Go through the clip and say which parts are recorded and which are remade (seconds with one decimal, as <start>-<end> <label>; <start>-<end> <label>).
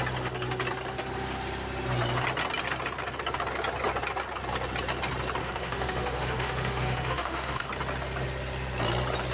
0.0-5.4 recorded; 5.4-7.7 remade; 7.7-9.3 recorded